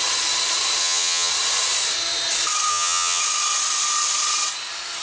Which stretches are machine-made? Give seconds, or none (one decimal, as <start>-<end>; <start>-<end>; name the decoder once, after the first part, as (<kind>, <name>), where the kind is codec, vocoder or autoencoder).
0.8-1.3 (vocoder, HiFi-GAN); 2.7-3.2